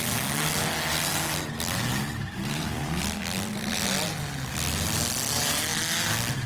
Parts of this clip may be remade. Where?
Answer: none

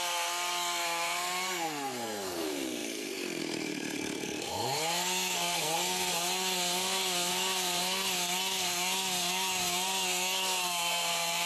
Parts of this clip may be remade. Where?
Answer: 0.0-11.5 (codec, SNAC)